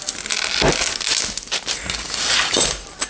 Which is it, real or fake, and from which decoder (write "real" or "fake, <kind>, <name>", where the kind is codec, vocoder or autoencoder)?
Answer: real